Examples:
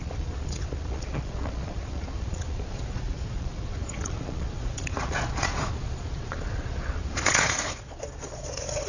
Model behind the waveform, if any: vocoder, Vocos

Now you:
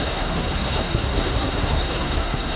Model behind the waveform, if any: codec, SNAC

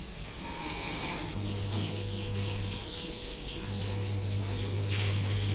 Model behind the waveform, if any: codec, SNAC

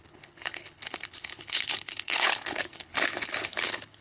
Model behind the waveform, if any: codec, HILCodec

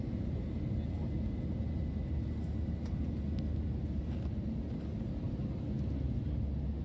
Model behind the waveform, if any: none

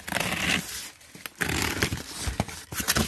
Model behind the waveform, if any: none